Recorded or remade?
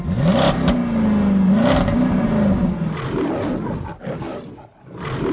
recorded